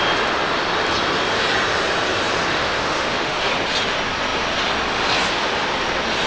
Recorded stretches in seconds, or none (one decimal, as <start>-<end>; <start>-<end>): 0.0-2.5; 3.5-6.3